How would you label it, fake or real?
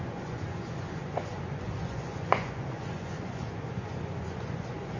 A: fake